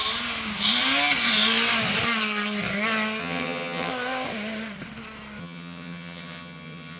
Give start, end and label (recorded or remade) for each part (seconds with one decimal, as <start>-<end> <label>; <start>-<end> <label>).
0.0-3.2 recorded; 3.2-3.9 remade; 3.9-5.4 recorded; 5.4-7.0 remade